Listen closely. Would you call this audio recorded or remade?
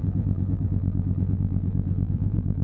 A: remade